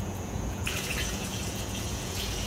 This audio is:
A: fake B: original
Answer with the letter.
A